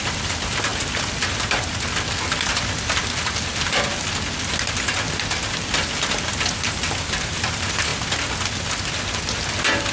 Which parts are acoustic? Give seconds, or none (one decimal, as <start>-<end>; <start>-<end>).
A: 0.0-9.9